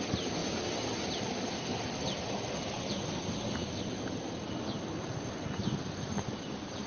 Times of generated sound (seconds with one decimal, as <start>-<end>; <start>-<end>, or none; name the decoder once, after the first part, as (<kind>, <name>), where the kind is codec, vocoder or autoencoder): none